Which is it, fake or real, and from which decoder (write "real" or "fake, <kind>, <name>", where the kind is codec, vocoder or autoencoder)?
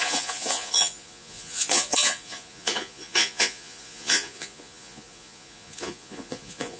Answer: fake, vocoder, Vocos